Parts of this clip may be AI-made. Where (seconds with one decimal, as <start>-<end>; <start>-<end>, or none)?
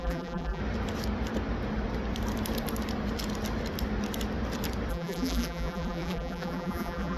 0.0-0.6; 4.9-7.2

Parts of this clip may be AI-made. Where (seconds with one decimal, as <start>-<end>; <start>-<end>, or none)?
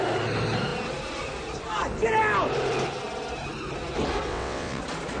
4.3-4.8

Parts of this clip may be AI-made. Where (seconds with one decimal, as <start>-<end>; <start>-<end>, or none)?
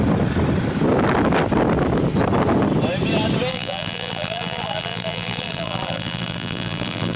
3.5-7.2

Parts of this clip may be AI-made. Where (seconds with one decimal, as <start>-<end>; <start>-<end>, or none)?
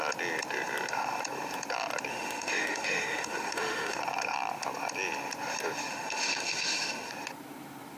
2.1-4.0; 5.9-7.1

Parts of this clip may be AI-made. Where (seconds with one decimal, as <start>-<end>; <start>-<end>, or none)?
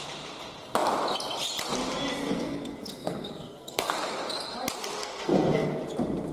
2.2-3.9; 5.0-5.8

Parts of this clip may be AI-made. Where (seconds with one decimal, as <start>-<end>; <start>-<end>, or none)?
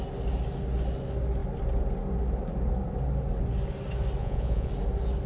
4.2-4.7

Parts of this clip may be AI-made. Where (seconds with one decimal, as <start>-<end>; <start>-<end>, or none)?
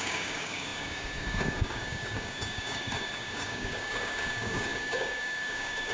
0.0-5.9